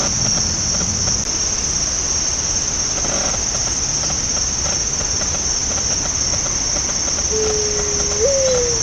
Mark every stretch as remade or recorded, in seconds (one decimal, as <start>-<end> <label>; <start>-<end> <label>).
0.0-8.8 recorded